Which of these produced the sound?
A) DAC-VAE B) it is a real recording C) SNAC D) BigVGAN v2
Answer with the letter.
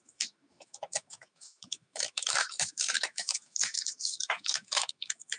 A